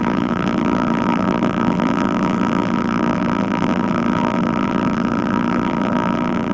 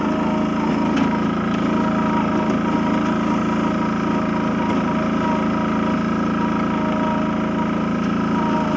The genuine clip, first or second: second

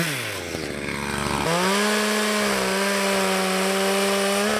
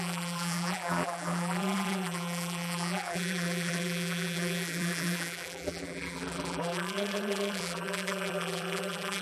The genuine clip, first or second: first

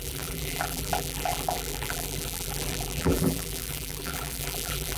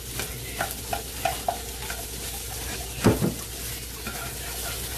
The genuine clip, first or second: second